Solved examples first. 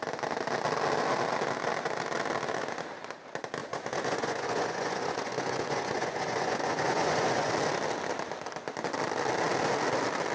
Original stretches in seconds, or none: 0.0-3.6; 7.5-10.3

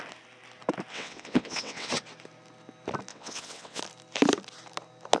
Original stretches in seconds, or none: 0.0-0.9; 1.9-3.1; 3.8-5.2

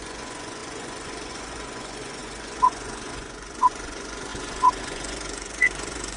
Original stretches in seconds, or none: none

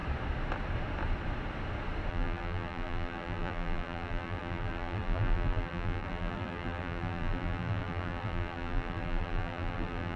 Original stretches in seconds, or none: 0.0-2.1